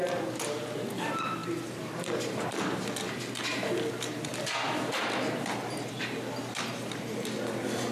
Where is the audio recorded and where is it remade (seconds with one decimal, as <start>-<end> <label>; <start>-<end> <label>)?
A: 0.0-7.9 recorded